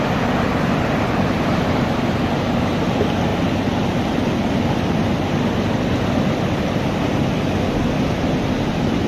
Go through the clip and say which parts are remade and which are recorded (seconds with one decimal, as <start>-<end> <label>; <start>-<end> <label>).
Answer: 0.0-9.1 remade